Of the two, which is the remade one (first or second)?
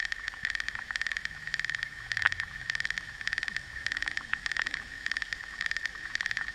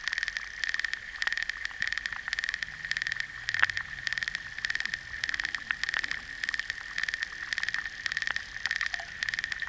first